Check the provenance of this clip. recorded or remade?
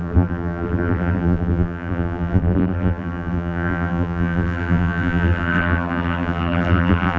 remade